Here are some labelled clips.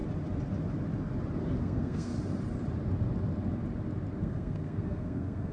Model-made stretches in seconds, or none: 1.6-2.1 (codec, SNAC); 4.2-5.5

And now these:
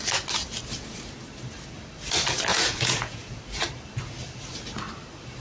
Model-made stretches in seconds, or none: 2.5-3.4 (vocoder, Vocos)

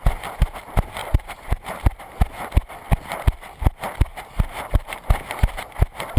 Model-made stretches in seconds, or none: 1.0-2.0 (vocoder, BigVGAN v2); 4.1-5.1

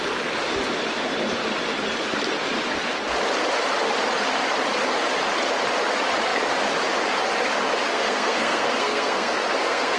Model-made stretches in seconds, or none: 7.9-10.0 (codec, SNAC)

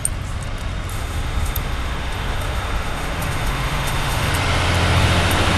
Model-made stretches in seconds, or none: 0.9-4.3 (autoencoder, DAC-VAE)

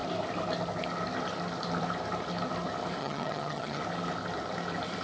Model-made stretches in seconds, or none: 3.0-3.8 (vocoder, HiFi-GAN)